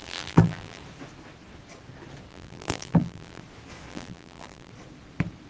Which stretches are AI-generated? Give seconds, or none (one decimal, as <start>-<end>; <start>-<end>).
0.0-0.8; 2.3-3.4; 3.9-4.7